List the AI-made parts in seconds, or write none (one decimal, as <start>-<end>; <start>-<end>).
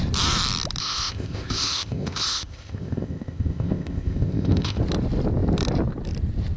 0.8-4.8